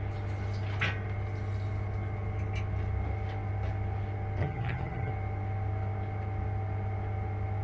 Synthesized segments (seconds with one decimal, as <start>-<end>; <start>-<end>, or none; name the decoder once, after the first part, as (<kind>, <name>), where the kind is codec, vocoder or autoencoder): 4.4-5.1 (vocoder, HiFi-GAN)